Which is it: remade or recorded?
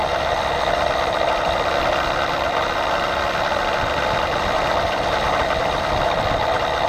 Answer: remade